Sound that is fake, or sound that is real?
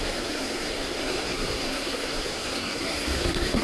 fake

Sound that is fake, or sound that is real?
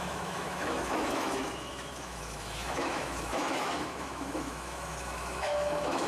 fake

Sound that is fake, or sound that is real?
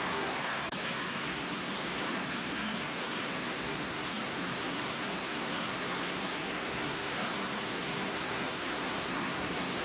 fake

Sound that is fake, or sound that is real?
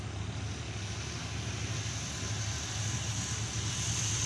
real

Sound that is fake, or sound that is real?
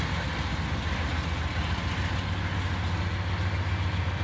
real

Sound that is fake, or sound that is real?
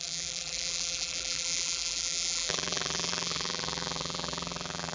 fake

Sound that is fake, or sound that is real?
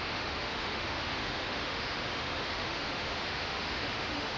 fake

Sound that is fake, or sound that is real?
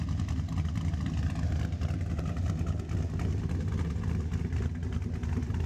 real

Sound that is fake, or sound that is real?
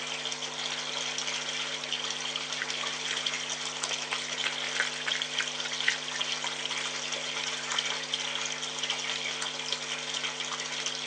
real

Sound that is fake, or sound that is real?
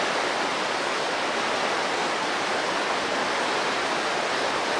real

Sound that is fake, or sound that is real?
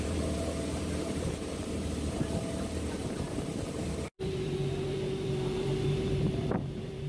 fake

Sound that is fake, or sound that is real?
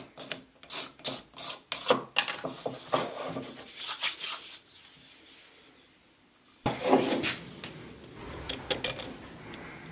real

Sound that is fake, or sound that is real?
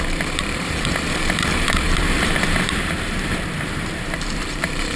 fake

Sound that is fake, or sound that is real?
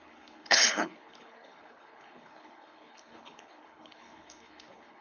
fake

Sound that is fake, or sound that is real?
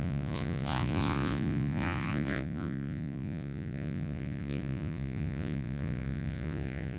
fake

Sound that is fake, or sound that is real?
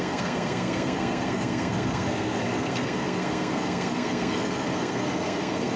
fake